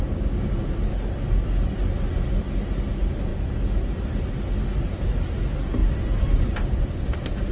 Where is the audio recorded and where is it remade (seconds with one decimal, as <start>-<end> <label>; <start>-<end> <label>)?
0.0-5.8 recorded; 5.8-7.5 remade